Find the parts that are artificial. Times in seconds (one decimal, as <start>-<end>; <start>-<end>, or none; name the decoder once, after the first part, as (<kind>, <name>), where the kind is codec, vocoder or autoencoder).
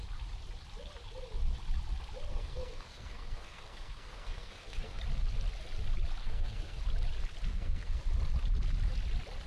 2.3-5.0 (codec, SNAC); 6.2-6.8; 7.5-8.0